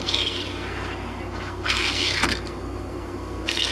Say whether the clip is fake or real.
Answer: fake